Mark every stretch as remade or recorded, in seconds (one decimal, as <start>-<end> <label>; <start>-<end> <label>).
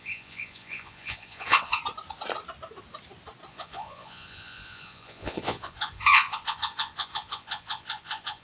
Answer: 0.0-1.8 remade; 1.8-3.5 recorded; 3.5-8.4 remade